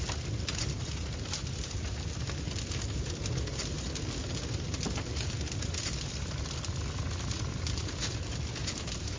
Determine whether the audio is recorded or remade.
recorded